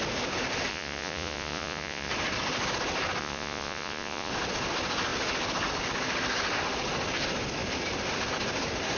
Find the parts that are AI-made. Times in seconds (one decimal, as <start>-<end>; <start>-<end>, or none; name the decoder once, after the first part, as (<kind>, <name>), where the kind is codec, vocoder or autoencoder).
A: 0.7-2.1 (vocoder, Vocos); 3.2-4.3